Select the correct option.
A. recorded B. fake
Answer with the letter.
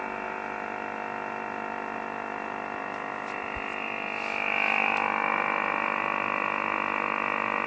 A